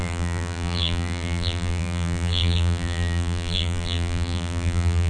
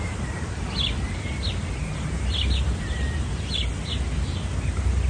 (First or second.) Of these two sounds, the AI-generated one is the first